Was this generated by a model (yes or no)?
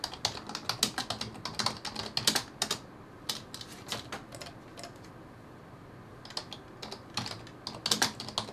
no